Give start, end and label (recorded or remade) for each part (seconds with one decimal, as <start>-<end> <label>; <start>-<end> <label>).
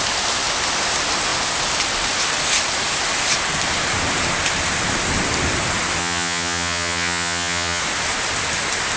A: 0.0-6.0 recorded; 6.0-7.8 remade; 7.8-9.0 recorded